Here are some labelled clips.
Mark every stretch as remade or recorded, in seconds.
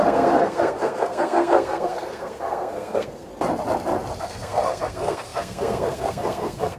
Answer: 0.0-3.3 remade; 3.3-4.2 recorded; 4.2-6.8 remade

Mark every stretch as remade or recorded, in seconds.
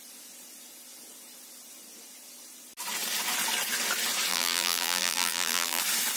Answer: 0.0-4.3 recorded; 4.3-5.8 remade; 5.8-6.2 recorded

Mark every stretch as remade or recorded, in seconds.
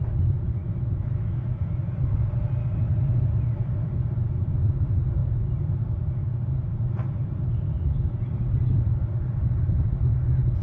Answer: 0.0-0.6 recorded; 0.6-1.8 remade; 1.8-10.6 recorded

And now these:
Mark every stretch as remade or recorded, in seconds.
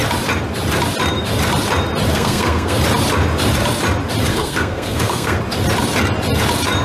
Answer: 0.0-2.1 recorded; 2.1-2.8 remade; 2.8-4.3 recorded; 4.3-5.4 remade; 5.4-6.8 recorded